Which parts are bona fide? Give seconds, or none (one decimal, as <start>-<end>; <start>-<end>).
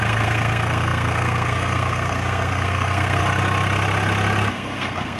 3.2-4.5